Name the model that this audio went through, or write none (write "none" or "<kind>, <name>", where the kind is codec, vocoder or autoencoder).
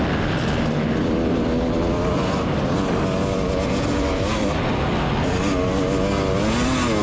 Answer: none